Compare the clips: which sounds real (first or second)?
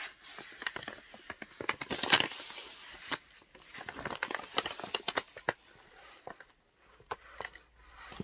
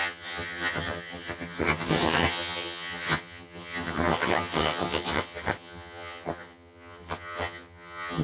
first